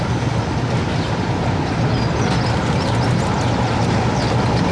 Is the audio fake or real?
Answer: real